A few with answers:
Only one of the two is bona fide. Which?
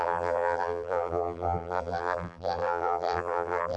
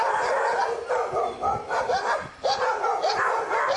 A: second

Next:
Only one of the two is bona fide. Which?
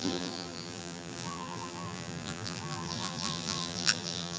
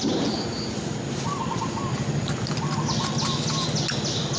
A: second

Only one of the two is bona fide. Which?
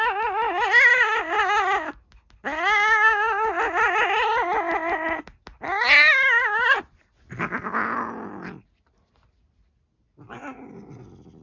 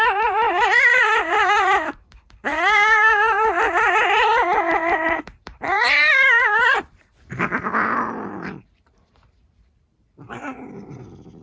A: first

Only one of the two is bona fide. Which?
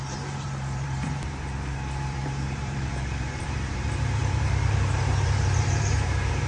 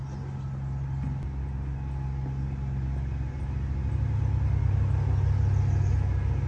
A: second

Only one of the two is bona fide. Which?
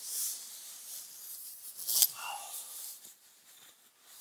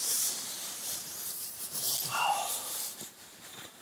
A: first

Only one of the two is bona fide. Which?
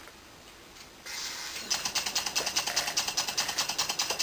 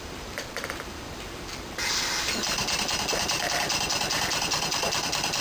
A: first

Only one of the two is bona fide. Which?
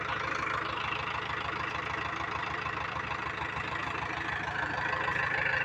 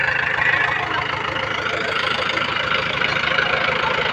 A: first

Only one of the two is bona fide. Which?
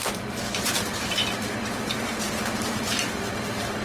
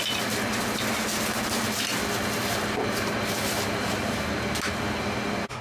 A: second